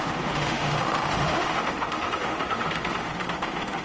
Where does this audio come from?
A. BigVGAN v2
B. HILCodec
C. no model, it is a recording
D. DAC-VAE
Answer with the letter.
D